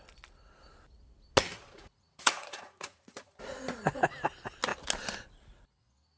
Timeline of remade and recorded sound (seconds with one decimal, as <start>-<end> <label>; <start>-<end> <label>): 0.0-1.5 recorded; 1.5-4.0 remade; 4.0-6.2 recorded